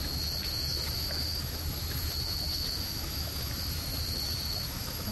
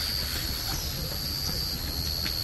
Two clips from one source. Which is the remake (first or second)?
first